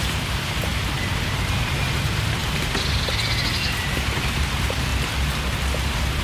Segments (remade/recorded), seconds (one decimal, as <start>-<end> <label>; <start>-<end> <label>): 0.0-0.7 remade; 0.7-1.7 recorded; 1.7-2.4 remade; 2.4-3.6 recorded; 3.6-4.9 remade; 4.9-6.2 recorded